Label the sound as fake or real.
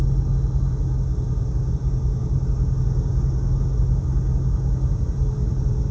real